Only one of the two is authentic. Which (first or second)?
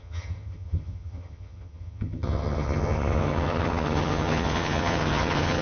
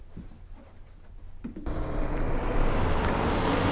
second